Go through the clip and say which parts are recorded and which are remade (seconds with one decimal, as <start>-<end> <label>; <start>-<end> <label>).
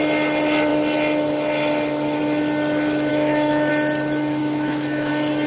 0.0-3.1 recorded; 3.1-3.7 remade; 3.7-4.4 recorded; 4.4-5.1 remade; 5.1-5.5 recorded